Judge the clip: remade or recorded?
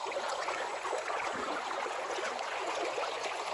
remade